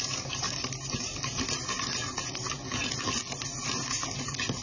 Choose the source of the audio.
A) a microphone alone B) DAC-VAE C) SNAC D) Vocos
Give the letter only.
A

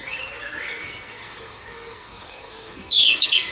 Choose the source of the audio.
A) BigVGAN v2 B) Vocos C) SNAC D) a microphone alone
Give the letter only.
C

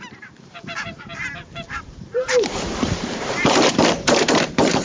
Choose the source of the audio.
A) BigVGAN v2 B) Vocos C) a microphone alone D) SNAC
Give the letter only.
A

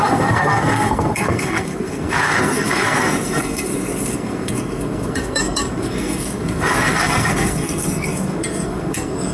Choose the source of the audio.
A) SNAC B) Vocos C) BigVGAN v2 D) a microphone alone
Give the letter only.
A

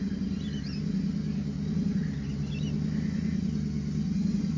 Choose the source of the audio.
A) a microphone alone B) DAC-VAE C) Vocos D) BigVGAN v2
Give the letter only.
A